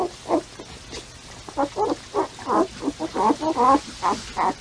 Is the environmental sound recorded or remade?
recorded